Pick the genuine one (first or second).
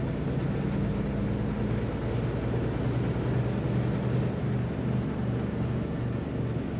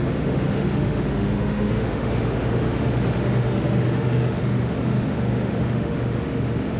first